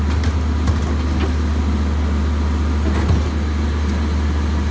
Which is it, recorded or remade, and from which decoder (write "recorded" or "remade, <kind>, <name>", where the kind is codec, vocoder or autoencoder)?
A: recorded